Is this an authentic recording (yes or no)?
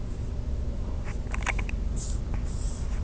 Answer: yes